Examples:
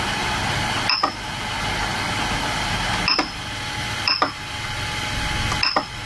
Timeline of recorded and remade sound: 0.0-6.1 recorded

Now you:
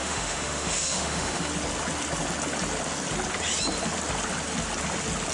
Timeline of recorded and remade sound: 0.0-1.5 remade; 1.5-5.3 recorded

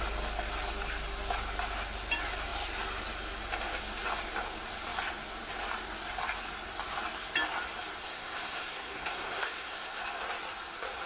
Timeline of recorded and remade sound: 0.0-8.0 recorded; 8.0-10.0 remade; 10.0-11.1 recorded

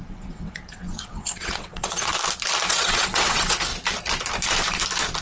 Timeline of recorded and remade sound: 0.0-2.1 remade; 2.1-2.7 recorded; 2.7-3.7 remade; 3.7-5.2 recorded